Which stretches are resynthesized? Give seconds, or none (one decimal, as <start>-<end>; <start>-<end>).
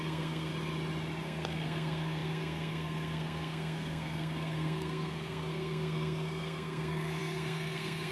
0.0-0.5; 1.2-8.1